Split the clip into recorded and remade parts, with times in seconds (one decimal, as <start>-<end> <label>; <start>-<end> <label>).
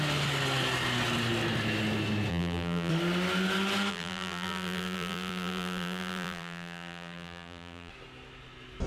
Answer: 0.0-2.3 recorded; 2.3-2.9 remade; 2.9-3.9 recorded; 3.9-7.9 remade; 7.9-8.9 recorded